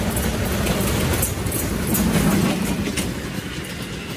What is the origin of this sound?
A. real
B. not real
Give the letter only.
A